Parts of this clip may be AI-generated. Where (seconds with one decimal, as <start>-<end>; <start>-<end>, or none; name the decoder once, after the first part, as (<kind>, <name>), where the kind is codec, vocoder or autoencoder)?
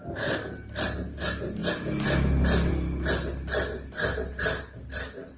none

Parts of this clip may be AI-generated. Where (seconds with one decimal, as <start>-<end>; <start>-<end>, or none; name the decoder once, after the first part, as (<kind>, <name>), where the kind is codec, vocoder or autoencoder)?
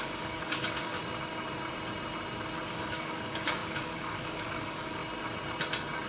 0.0-1.0 (codec, DAC); 2.7-5.0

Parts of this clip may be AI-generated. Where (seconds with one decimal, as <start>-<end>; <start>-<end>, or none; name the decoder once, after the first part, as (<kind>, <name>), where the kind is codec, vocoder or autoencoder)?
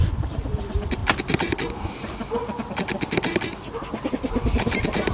0.0-1.0 (vocoder, BigVGAN v2); 4.1-5.1